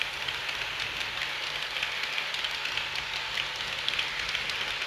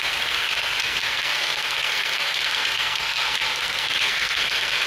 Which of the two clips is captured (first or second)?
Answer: first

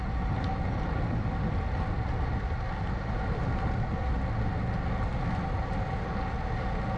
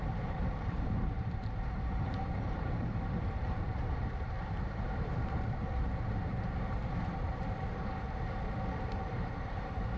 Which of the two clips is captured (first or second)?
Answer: first